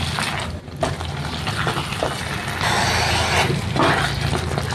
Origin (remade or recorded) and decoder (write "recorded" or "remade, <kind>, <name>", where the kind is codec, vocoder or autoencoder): recorded